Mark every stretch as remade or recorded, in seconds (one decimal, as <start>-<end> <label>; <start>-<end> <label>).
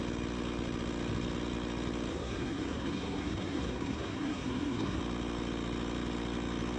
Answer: 0.0-2.1 recorded; 2.1-5.0 remade; 5.0-6.8 recorded